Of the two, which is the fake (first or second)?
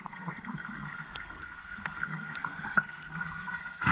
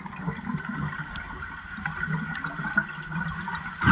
first